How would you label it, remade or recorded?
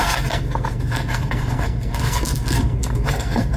remade